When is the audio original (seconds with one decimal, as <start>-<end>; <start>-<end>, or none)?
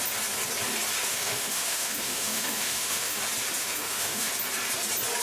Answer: 0.0-1.1; 3.2-3.6; 4.3-5.2